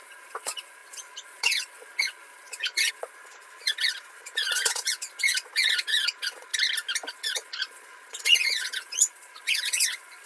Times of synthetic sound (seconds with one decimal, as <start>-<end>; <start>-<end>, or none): 0.0-6.5; 7.1-10.3